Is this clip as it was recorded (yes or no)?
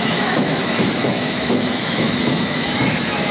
no